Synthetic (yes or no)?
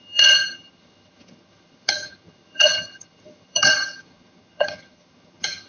yes